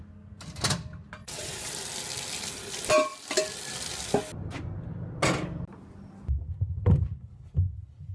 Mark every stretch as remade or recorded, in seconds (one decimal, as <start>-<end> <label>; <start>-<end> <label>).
0.0-1.2 recorded; 1.2-1.7 remade; 1.7-8.1 recorded